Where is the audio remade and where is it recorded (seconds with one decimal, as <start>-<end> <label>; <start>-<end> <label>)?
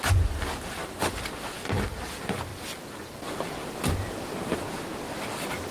0.0-5.7 recorded